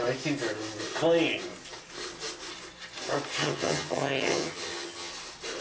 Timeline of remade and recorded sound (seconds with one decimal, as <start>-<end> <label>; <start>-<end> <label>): 0.0-3.4 recorded; 3.4-5.1 remade; 5.1-5.6 recorded